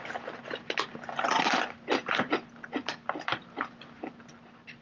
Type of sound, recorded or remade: recorded